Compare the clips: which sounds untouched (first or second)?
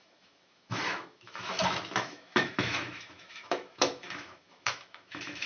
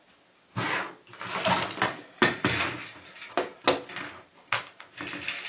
second